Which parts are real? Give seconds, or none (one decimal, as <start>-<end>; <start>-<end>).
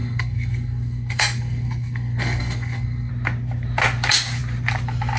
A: 3.1-5.2